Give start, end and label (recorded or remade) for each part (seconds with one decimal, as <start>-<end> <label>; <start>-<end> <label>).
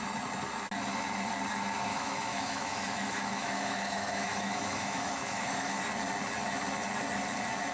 0.0-1.9 recorded; 1.9-5.8 remade; 5.8-7.7 recorded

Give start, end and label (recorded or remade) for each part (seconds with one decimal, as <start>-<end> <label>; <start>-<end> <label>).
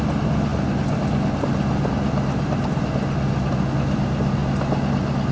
0.0-5.3 recorded